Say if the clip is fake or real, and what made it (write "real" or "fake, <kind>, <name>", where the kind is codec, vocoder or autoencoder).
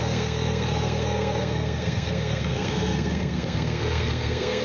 fake, codec, SNAC